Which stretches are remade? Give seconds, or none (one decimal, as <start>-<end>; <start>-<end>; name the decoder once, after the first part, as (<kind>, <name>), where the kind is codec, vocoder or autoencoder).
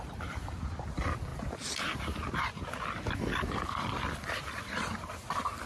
0.0-1.3 (vocoder, BigVGAN v2); 3.4-5.7